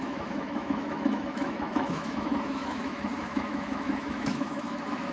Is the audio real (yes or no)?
no